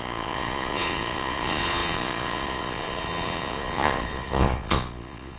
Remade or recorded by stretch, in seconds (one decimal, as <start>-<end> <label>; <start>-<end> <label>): 0.0-5.4 remade